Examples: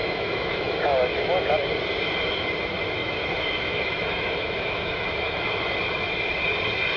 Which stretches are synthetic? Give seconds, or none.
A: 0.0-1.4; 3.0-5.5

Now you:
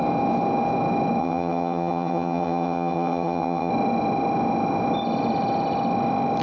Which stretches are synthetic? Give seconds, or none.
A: 1.2-3.7